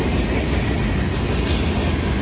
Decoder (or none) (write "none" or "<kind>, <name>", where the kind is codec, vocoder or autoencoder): none